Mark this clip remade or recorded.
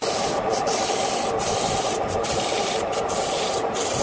recorded